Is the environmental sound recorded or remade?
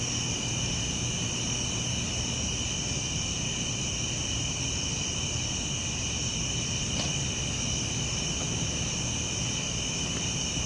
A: recorded